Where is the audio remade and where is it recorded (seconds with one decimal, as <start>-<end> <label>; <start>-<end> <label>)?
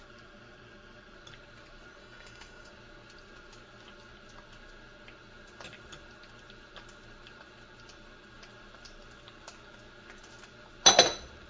0.0-2.0 recorded; 2.0-2.7 remade; 2.7-11.5 recorded